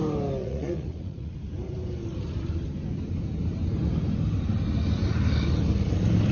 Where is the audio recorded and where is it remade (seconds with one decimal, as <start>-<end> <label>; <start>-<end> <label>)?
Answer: 0.0-0.4 recorded; 0.4-1.3 remade; 1.3-6.3 recorded